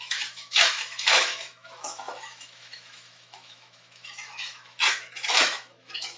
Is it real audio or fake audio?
fake